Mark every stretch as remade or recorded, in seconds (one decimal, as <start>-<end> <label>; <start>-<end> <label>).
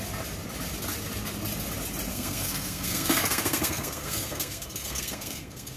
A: 0.0-2.1 recorded; 2.1-5.8 remade